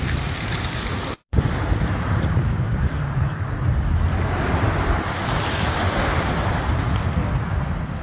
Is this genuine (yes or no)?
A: no